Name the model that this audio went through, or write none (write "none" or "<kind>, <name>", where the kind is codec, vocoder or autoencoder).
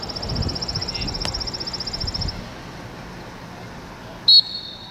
none